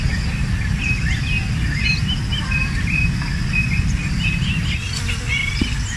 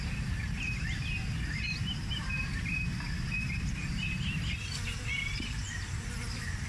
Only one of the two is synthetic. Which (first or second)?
second